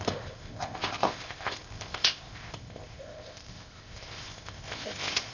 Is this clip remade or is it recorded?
remade